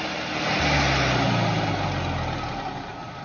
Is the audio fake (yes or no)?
no